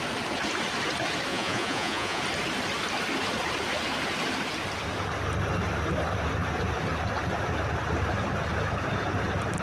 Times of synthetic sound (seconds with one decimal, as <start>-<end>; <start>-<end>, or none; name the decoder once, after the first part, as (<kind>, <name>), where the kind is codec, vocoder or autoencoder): 1.3-2.2 (vocoder, Vocos)

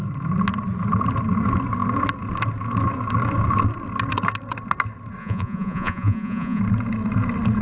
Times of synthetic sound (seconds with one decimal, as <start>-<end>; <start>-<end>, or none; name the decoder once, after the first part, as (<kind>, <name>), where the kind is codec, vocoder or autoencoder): 5.2-6.6 (vocoder, Vocos)

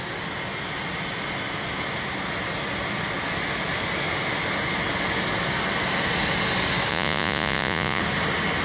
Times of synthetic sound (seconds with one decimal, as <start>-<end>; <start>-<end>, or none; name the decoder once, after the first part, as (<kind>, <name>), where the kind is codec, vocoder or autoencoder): 6.9-8.0 (vocoder, Vocos)

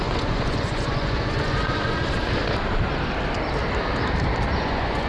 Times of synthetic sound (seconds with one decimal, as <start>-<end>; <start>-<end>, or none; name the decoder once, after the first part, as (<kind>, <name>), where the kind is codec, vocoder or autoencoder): 0.0-2.0 (vocoder, Vocos); 4.6-5.1

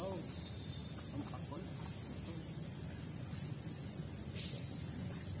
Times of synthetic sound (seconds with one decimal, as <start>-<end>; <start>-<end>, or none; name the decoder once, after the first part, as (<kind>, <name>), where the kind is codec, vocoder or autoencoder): 2.4-5.4 (vocoder, Vocos)

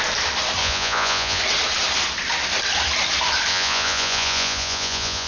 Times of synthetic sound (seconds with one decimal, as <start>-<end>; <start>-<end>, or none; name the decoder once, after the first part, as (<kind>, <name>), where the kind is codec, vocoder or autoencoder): 0.6-1.4 (vocoder, Vocos); 3.5-5.3

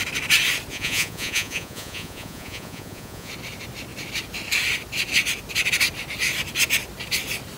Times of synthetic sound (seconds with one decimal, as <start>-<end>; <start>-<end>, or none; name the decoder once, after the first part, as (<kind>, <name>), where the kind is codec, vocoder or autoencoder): 0.7-3.3 (vocoder, Vocos)